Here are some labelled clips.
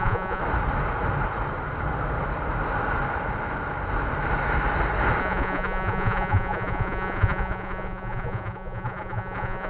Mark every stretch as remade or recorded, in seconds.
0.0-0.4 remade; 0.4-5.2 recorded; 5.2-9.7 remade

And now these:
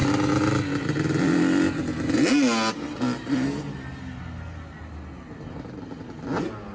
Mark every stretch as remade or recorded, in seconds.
0.0-6.7 recorded